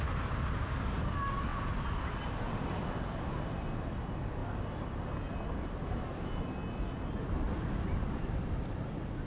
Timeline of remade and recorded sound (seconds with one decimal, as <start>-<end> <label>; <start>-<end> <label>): 0.0-9.3 recorded